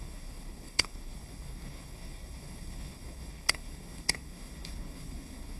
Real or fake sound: fake